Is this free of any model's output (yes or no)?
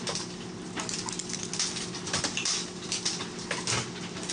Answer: yes